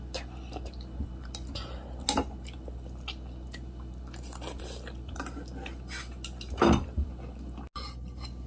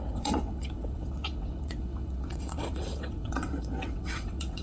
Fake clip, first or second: second